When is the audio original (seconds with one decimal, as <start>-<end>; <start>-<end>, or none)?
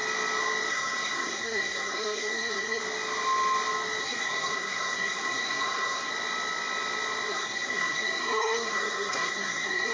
0.0-0.7; 2.8-4.0; 6.1-7.3